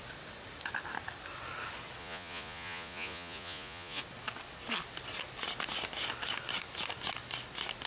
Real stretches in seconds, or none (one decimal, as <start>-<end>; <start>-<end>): 0.0-2.0; 4.0-7.9

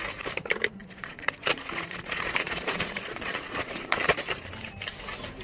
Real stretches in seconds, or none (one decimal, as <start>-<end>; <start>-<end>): 0.0-0.8; 4.0-5.4

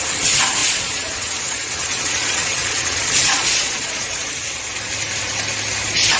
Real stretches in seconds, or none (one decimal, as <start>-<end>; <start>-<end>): 0.0-0.6; 4.3-6.2

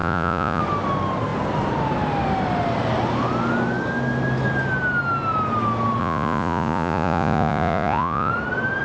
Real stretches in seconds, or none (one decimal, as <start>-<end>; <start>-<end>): 0.6-6.0; 8.3-8.8

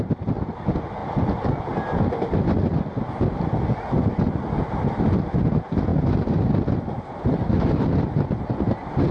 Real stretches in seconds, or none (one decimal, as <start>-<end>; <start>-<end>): 0.0-9.1

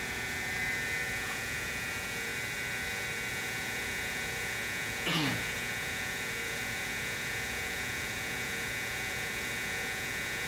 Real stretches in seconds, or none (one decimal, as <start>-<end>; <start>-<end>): 2.3-3.3

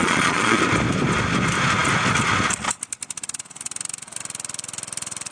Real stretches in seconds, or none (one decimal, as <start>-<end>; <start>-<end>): 0.6-5.3

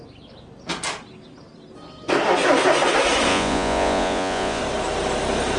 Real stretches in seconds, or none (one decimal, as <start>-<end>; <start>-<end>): 0.0-3.3; 4.6-5.6